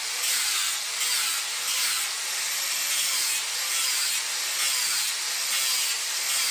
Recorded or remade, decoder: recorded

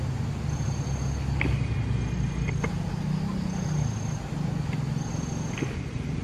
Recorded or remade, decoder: recorded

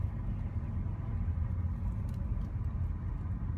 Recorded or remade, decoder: recorded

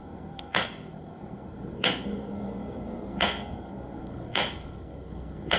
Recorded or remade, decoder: remade, codec, SNAC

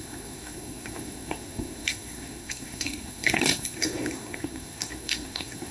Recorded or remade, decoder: remade, codec, SNAC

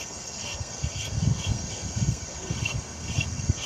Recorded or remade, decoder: remade, codec, SNAC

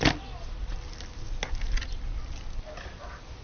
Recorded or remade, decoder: recorded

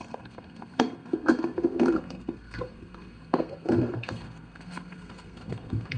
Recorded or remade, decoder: remade, codec, SNAC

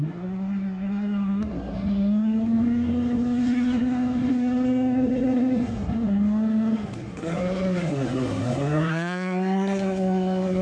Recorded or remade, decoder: remade, codec, SNAC